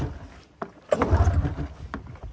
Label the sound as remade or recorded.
recorded